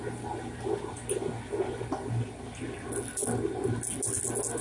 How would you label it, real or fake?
real